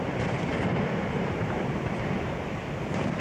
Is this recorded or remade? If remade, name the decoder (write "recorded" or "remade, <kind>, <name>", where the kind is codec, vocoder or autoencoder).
remade, vocoder, BigVGAN v2